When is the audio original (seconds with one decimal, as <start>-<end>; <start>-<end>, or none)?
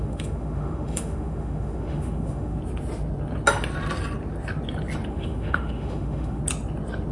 2.6-5.1; 6.4-7.1